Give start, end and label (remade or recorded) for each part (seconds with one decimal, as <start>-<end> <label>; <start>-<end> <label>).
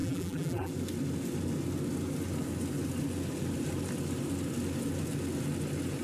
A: 0.0-0.7 remade; 0.7-6.0 recorded